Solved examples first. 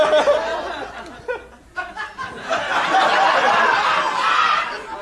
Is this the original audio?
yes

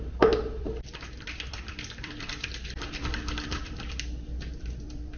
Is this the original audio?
no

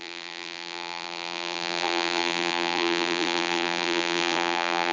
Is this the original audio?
no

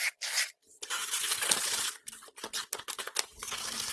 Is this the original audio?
no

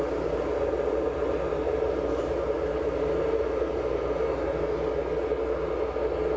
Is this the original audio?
yes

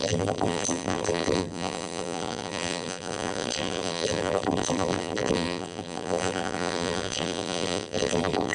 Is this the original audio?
no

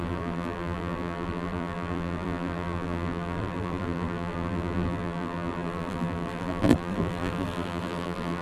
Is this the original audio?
no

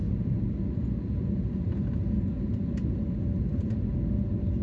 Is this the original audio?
yes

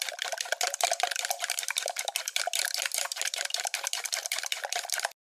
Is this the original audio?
yes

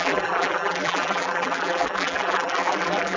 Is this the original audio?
no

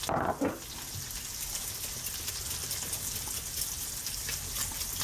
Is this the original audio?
yes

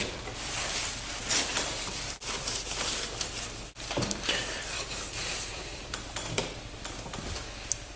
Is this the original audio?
no